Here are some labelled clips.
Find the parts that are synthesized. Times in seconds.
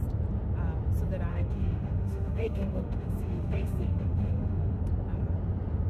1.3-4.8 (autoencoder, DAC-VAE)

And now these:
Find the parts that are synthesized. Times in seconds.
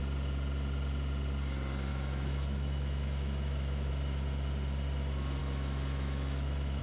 1.9-3.9 (autoencoder, DAC-VAE); 5.4-6.8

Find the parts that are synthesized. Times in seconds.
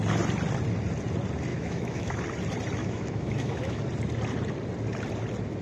1.5-2.2 (autoencoder, DAC-VAE); 2.8-3.8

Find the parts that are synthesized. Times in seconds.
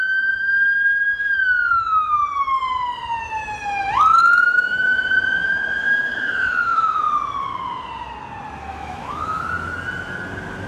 1.7-2.2 (autoencoder, DAC-VAE); 4.2-5.1; 5.8-7.0; 8.7-9.4